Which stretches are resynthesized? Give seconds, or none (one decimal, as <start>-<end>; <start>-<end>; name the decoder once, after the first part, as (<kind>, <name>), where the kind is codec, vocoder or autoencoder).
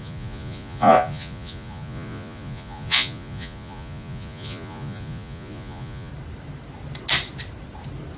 0.0-6.1 (vocoder, Vocos)